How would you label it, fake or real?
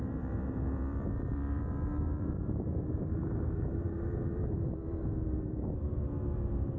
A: fake